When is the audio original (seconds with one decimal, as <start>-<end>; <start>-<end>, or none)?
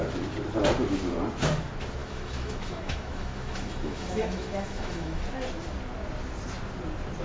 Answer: 0.0-2.0; 5.2-7.2